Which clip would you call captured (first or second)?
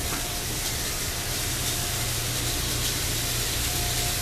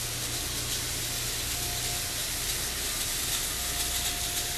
second